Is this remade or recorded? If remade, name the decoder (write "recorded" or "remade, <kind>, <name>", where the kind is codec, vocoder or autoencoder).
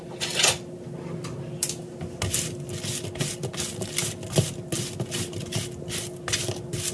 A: recorded